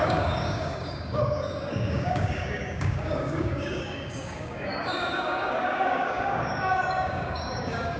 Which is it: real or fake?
fake